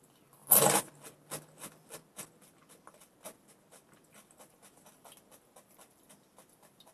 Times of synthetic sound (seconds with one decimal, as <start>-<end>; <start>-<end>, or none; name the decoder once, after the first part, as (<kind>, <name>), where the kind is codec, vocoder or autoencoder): none